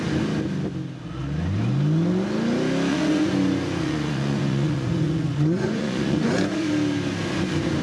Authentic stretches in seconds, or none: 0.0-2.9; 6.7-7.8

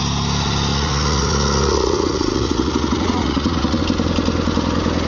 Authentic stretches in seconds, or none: 0.0-0.7; 3.8-5.1

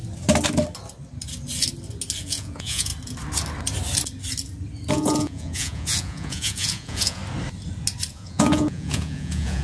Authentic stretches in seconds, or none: 0.0-2.2; 2.9-4.9; 7.2-8.1